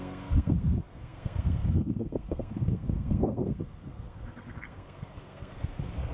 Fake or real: fake